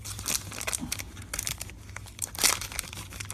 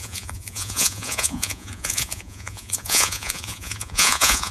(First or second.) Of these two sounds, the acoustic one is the first